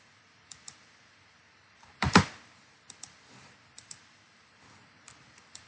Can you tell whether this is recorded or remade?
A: remade